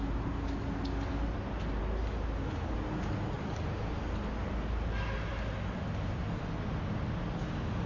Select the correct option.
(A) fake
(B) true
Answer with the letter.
B